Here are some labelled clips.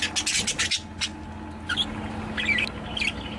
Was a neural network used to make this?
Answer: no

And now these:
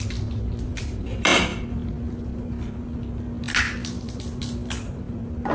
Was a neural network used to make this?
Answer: no